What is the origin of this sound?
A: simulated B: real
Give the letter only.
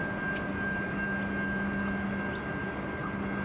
B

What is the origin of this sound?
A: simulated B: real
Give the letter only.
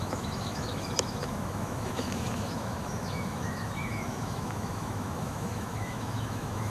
A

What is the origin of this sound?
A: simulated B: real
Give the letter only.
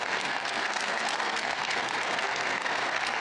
A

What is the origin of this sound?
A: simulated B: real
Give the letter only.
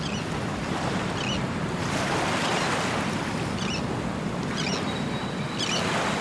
B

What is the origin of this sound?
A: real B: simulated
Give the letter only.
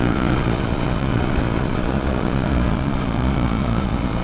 B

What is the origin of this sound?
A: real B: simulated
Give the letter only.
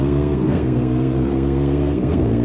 B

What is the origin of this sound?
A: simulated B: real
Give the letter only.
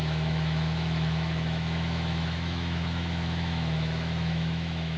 A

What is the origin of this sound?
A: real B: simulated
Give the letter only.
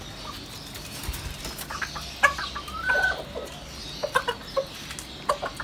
A